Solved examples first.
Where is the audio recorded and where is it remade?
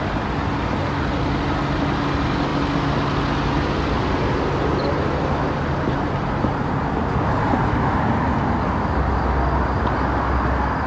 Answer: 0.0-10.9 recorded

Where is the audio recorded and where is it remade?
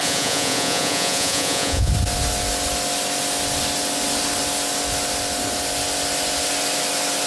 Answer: 0.0-1.9 remade; 1.9-7.3 recorded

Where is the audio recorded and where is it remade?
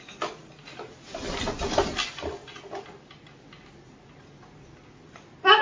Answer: 0.0-5.6 recorded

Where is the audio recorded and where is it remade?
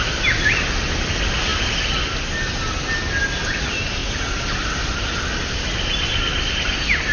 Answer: 0.0-7.1 recorded